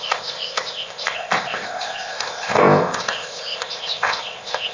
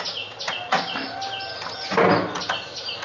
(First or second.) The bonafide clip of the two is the second